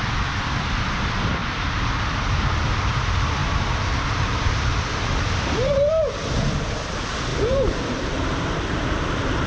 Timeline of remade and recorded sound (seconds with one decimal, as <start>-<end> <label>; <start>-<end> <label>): 0.0-1.4 recorded; 1.4-2.0 remade; 2.0-3.4 recorded; 3.4-5.9 remade; 5.9-7.3 recorded; 7.3-9.5 remade